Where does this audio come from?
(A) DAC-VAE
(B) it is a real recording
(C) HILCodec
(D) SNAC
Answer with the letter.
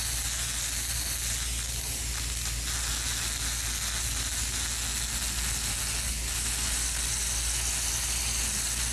B